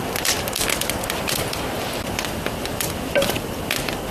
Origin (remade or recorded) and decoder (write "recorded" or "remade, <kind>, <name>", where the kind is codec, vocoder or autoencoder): remade, vocoder, BigVGAN v2